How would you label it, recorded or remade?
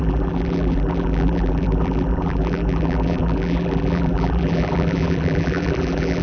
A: remade